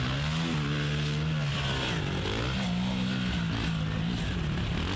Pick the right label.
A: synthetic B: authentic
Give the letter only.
B